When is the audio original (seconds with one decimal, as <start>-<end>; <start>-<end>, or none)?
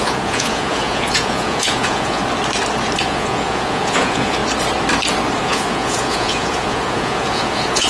2.2-3.0; 4.4-5.4